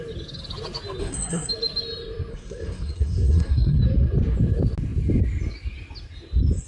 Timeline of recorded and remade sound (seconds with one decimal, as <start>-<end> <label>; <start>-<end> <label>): 0.0-1.0 recorded; 1.0-1.5 remade; 1.5-2.3 recorded; 2.3-3.8 remade; 3.8-6.7 recorded